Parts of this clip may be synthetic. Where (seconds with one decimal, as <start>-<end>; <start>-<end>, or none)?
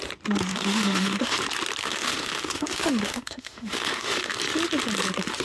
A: 0.5-1.4; 1.8-4.4